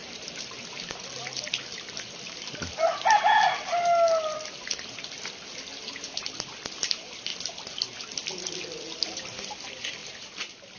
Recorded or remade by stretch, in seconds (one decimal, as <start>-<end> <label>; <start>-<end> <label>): 0.0-0.6 remade; 0.6-1.7 recorded; 1.7-2.5 remade; 2.5-10.0 recorded; 10.0-10.8 remade